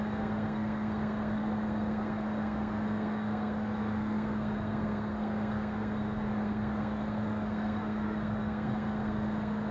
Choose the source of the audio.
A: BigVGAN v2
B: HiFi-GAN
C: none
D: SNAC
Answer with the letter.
D